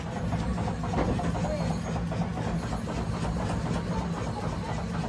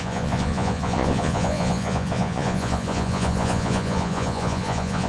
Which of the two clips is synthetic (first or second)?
second